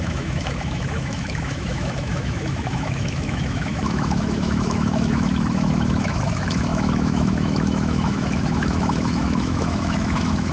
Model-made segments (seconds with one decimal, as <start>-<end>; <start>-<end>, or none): 0.0-10.5

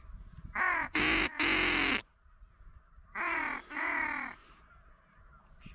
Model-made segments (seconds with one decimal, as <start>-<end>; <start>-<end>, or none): none

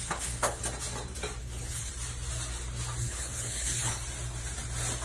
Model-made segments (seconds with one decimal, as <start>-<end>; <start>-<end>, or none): 0.0-0.6; 1.4-1.9; 3.0-4.0

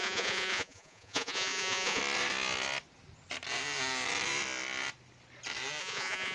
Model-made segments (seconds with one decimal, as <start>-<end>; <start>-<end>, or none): 0.0-2.0; 5.8-6.3

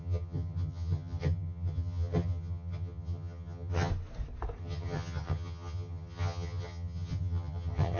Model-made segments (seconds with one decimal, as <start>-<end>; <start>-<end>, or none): 0.0-3.9; 4.6-8.0

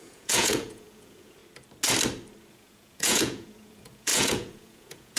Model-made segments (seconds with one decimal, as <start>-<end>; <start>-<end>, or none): 0.0-1.4; 2.5-5.2